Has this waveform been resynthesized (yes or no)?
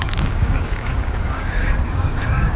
yes